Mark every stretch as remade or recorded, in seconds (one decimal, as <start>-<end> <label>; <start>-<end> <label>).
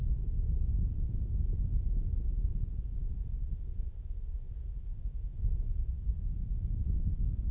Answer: 0.0-7.5 remade